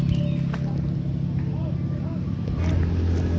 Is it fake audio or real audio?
real